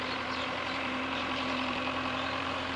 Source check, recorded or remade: remade